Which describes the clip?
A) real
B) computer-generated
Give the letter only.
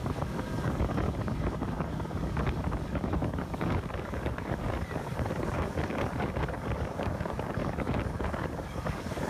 B